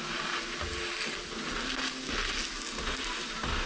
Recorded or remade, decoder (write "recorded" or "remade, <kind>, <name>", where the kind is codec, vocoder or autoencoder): recorded